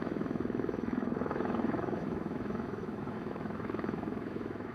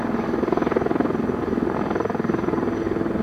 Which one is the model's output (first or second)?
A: first